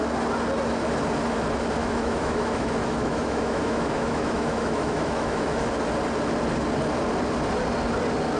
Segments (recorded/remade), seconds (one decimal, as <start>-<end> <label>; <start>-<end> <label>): 0.0-1.8 recorded; 1.8-5.7 remade; 5.7-8.4 recorded